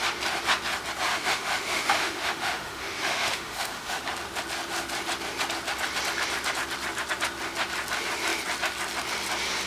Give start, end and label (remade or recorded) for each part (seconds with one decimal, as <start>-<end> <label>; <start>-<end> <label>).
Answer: 0.0-1.1 recorded; 1.1-4.0 remade; 4.0-9.7 recorded